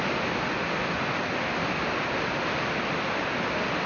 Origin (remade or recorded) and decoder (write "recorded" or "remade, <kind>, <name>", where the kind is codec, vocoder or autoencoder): recorded